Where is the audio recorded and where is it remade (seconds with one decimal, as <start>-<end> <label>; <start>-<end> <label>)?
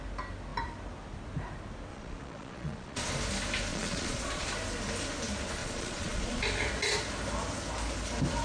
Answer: 0.0-1.9 recorded; 1.9-3.1 remade; 3.1-3.7 recorded; 3.7-4.5 remade; 4.5-5.6 recorded; 5.6-6.4 remade; 6.4-8.4 recorded